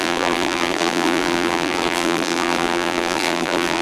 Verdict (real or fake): fake